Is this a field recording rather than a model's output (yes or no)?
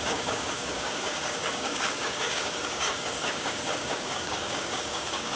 no